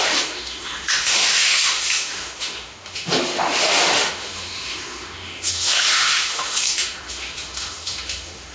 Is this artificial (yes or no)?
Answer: yes